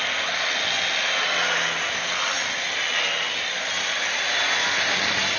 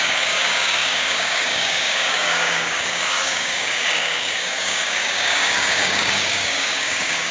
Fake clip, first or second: second